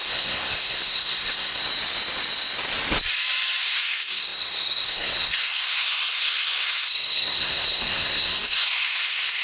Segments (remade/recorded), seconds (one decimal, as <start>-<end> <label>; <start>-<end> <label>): 0.0-1.6 remade; 1.6-3.6 recorded; 3.6-9.4 remade